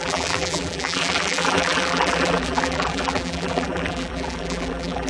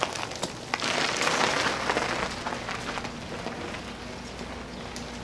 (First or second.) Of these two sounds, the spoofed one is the first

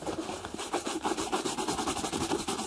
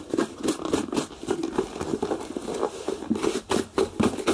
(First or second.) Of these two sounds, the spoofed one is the first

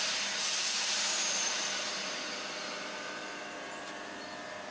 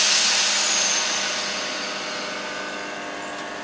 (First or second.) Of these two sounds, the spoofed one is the first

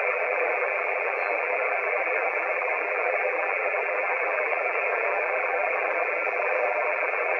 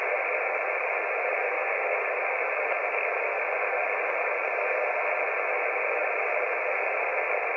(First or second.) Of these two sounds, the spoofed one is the first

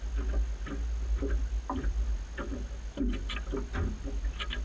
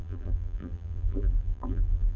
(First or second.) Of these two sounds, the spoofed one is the second